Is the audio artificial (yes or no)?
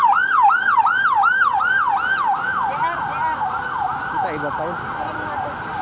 no